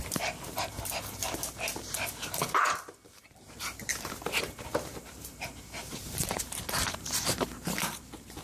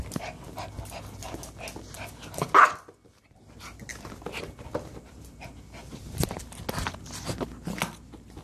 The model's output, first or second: first